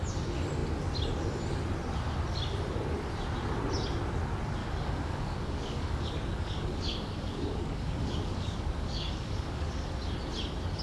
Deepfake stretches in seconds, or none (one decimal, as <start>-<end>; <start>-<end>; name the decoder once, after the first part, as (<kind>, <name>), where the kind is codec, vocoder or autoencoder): 4.6-9.9 (codec, DAC)